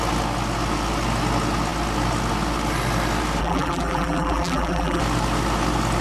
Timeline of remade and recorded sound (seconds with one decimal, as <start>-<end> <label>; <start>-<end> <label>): 0.0-3.4 recorded; 3.4-5.0 remade; 5.0-6.0 recorded